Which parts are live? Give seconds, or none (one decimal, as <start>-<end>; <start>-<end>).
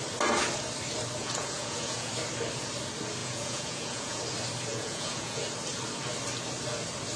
0.0-1.2; 2.1-3.2; 4.2-4.7; 5.4-7.2